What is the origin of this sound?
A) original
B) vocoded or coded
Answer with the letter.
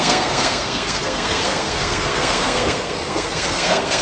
B